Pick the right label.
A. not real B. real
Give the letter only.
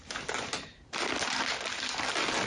B